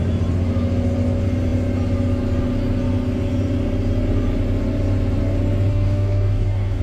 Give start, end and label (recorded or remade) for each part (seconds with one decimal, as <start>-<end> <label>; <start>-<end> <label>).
0.0-5.7 recorded; 5.7-6.8 remade